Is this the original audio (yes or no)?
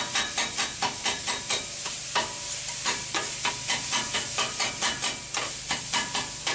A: yes